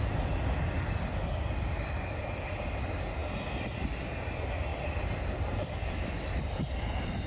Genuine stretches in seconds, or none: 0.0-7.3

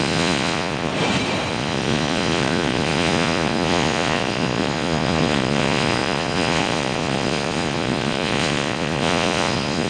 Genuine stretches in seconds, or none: 0.9-1.5

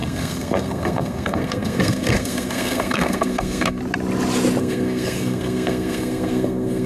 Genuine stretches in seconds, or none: 3.8-4.6